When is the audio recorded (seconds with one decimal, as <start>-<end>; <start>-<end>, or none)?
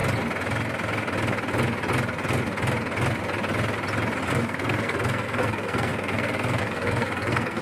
0.0-4.3